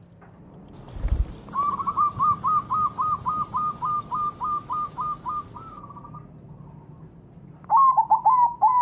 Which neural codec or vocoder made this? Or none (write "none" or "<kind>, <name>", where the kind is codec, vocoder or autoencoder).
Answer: none